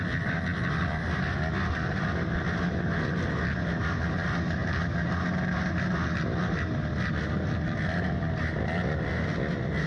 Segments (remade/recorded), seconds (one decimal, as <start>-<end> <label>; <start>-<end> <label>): 0.0-9.9 recorded